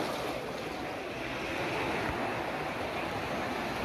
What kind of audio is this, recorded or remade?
recorded